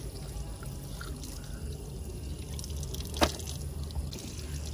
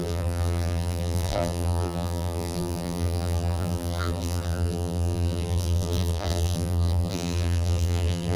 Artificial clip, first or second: second